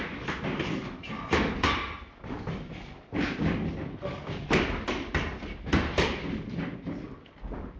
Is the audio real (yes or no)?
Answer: yes